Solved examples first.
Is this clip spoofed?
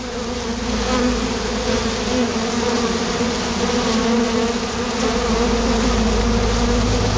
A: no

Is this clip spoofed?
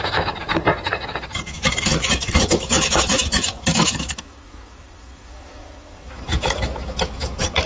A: yes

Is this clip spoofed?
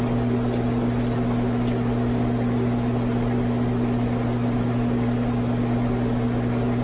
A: no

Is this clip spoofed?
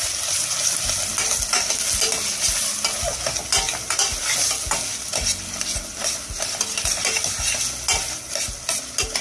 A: no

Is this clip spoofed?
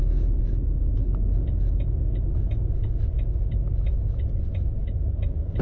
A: no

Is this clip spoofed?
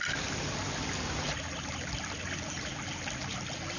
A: no